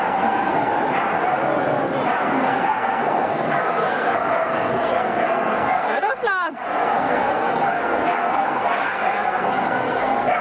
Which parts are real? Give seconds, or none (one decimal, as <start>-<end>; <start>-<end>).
0.7-2.2